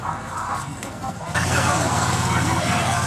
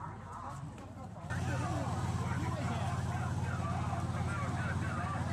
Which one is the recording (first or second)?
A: second